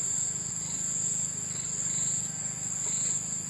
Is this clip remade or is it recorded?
recorded